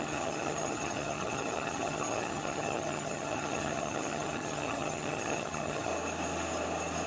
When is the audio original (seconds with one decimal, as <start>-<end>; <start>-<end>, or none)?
5.9-7.1